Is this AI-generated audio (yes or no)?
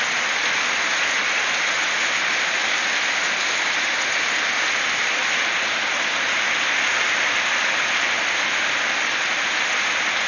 no